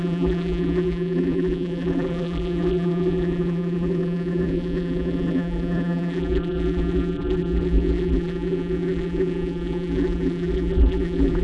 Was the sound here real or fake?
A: fake